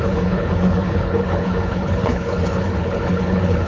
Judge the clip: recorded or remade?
remade